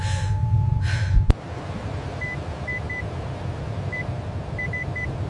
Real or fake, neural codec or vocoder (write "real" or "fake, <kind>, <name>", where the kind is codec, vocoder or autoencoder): real